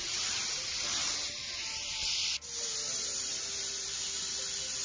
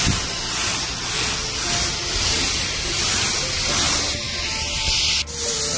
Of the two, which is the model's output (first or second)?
first